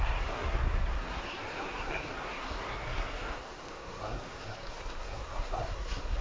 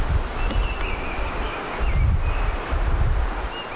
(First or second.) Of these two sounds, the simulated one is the first